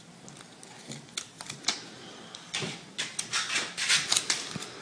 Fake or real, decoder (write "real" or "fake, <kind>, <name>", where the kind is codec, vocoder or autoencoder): real